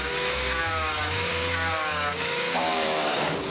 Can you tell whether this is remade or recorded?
remade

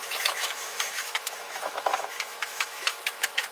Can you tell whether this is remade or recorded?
remade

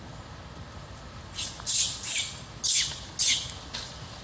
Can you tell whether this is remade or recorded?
recorded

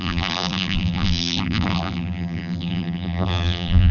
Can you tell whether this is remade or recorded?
remade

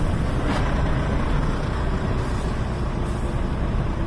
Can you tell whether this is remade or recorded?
recorded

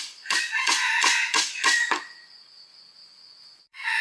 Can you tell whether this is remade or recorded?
remade